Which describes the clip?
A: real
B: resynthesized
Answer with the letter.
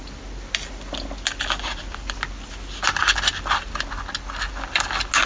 A